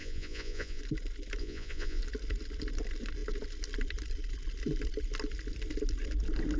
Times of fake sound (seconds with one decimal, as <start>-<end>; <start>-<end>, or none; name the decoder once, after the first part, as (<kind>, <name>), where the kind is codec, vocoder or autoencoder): 0.0-0.8 (vocoder, Vocos); 1.4-2.0